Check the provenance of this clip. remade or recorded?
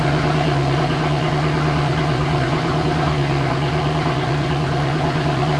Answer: remade